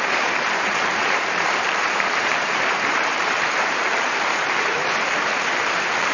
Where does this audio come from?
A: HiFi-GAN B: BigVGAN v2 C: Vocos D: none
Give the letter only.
B